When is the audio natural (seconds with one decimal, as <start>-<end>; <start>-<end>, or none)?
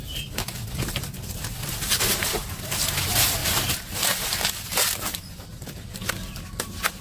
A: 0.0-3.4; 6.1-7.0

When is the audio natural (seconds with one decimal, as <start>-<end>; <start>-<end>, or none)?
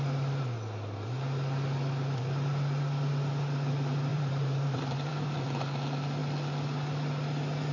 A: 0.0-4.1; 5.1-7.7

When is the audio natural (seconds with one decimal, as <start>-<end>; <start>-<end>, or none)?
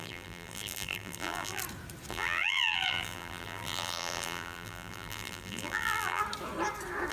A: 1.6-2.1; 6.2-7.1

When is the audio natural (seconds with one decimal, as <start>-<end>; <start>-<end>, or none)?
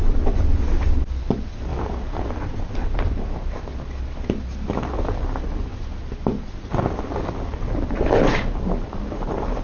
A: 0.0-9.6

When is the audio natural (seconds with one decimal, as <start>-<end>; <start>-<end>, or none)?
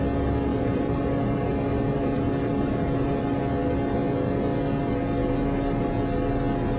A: 0.0-0.5; 3.4-6.8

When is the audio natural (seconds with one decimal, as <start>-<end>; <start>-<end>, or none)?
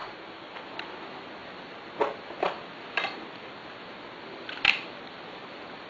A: 0.6-5.9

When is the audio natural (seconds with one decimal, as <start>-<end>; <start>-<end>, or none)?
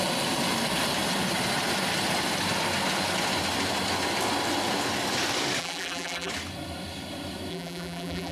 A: 0.0-5.6; 6.3-7.5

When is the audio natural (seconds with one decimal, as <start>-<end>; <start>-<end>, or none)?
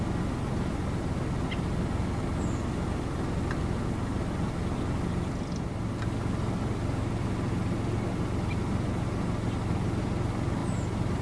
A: 0.0-10.6